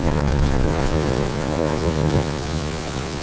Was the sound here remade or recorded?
remade